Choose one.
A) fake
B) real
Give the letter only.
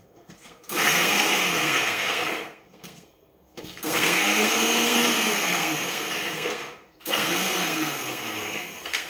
A